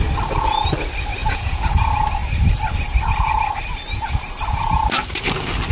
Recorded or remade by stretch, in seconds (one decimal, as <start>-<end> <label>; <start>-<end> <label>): 0.0-1.2 recorded; 1.2-1.7 remade; 1.7-5.7 recorded